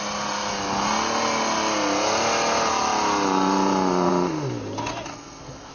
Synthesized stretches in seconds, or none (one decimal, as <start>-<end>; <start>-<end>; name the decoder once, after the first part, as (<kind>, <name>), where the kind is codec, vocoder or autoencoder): 5.1-5.7 (codec, SNAC)